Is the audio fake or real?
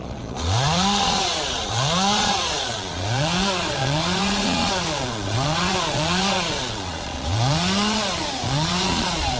fake